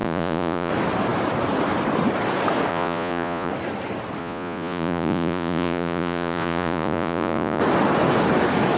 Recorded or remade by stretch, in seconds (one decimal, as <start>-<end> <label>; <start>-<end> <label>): 0.0-0.7 remade; 0.7-2.7 recorded; 2.7-3.5 remade; 3.5-4.2 recorded; 4.2-7.6 remade; 7.6-8.8 recorded